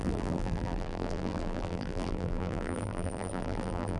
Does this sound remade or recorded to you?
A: remade